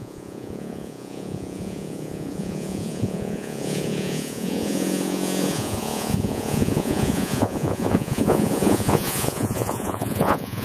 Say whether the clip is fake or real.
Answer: fake